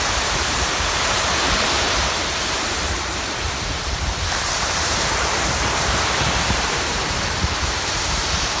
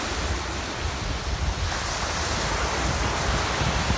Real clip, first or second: second